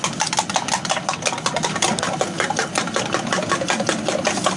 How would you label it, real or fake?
real